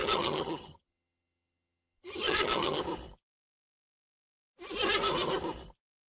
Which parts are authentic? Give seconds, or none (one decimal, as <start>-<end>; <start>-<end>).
2.8-6.1